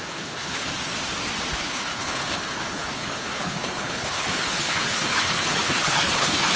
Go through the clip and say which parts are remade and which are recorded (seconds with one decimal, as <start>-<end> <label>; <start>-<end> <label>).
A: 0.0-0.7 remade; 0.7-1.5 recorded; 1.5-6.6 remade